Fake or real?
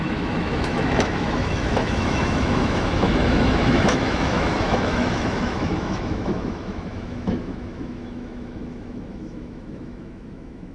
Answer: fake